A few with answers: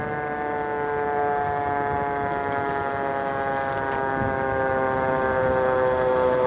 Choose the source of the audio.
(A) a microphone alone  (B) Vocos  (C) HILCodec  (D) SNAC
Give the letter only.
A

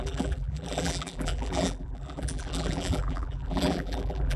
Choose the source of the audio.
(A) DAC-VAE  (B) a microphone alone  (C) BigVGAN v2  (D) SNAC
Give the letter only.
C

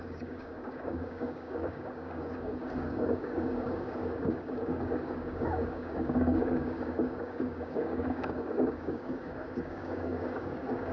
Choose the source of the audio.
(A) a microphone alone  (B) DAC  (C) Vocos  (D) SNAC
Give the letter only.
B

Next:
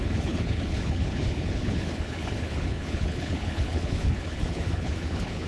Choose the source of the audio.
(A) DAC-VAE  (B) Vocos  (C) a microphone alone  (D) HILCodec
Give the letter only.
D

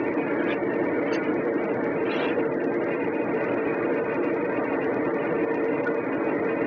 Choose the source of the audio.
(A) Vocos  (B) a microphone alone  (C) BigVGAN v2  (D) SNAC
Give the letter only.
B